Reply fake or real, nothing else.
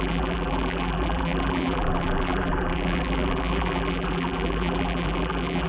fake